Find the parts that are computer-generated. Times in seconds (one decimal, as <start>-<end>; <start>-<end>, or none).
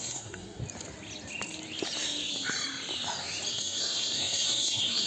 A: 0.0-0.6; 3.5-5.1